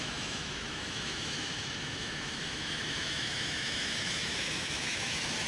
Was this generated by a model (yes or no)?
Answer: yes